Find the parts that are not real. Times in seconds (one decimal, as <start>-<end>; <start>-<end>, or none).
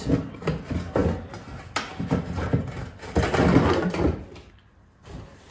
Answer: none